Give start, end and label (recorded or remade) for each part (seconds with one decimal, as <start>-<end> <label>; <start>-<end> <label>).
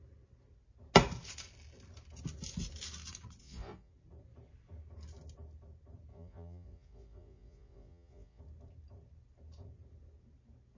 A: 0.0-3.4 recorded; 3.4-3.9 remade; 3.9-6.1 recorded; 6.1-8.4 remade; 8.4-10.8 recorded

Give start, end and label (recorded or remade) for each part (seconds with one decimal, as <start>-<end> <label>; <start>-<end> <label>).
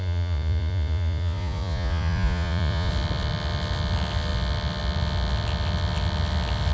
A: 0.0-2.9 remade; 2.9-6.7 recorded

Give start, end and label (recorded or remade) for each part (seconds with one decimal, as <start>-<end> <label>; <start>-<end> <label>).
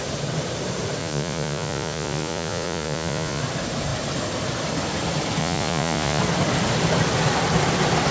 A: 0.0-1.0 recorded; 1.0-3.4 remade; 3.4-5.4 recorded; 5.4-6.2 remade; 6.2-8.1 recorded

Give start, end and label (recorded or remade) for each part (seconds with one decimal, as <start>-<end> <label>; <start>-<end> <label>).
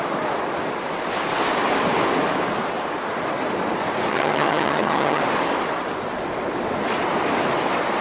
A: 0.0-4.1 recorded; 4.1-5.2 remade; 5.2-8.0 recorded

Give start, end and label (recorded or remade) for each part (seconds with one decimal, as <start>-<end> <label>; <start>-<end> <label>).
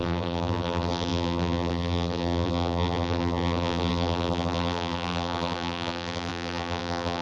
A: 0.0-7.2 remade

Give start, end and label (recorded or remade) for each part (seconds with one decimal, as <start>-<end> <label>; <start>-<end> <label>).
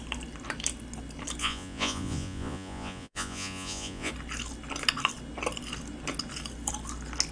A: 0.0-1.4 recorded; 1.4-4.1 remade; 4.1-7.3 recorded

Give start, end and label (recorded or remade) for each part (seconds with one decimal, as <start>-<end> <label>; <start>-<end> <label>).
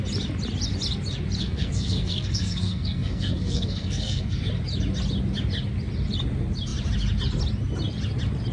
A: 0.0-1.4 recorded; 1.4-4.4 remade; 4.4-8.5 recorded